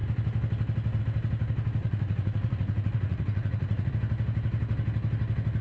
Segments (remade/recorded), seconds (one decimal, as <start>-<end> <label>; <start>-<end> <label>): 0.0-1.8 recorded; 1.8-3.9 remade; 3.9-5.6 recorded

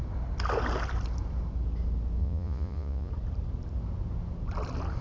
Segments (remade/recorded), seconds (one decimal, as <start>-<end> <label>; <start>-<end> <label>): 0.0-2.2 recorded; 2.2-3.1 remade; 3.1-5.0 recorded

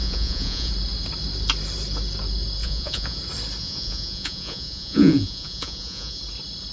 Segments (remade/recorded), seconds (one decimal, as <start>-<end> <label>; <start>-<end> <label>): 0.0-0.7 remade; 0.7-2.6 recorded; 2.6-3.2 remade; 3.2-3.6 recorded; 3.6-6.2 remade; 6.2-6.7 recorded

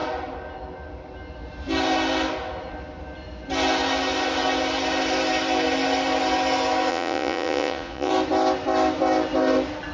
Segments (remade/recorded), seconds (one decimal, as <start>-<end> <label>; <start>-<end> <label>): 0.0-6.9 recorded; 6.9-8.1 remade; 8.1-9.9 recorded

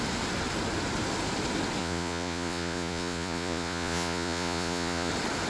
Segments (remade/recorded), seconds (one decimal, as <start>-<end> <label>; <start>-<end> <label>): 0.0-1.8 recorded; 1.8-5.1 remade; 5.1-5.5 recorded

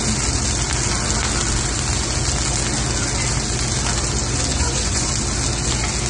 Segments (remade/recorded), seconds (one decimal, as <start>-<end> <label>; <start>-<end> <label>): 0.0-4.5 recorded; 4.5-5.1 remade; 5.1-6.1 recorded

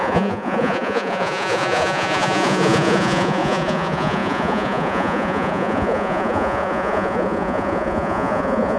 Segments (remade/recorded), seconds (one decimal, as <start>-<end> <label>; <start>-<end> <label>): 0.0-8.8 remade

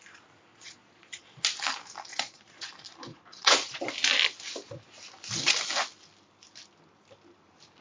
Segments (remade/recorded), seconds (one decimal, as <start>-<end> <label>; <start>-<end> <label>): 0.0-0.5 recorded; 0.5-1.4 remade; 1.4-2.1 recorded; 2.1-2.7 remade; 2.7-3.1 recorded; 3.1-3.9 remade; 3.9-7.8 recorded